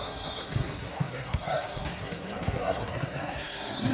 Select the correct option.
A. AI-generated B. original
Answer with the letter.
A